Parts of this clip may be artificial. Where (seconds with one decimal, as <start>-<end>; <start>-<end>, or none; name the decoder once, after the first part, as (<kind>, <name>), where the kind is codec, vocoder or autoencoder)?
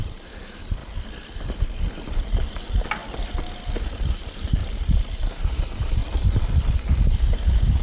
0.0-0.8 (vocoder, BigVGAN v2); 2.2-3.0; 3.8-4.6; 5.3-6.0; 7.3-7.8